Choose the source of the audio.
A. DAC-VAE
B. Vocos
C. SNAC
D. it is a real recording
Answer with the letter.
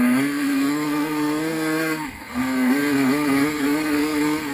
C